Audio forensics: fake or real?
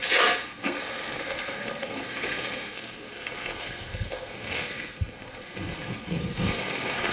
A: fake